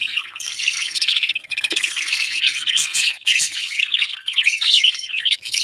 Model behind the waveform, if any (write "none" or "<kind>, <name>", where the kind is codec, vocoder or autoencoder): codec, SNAC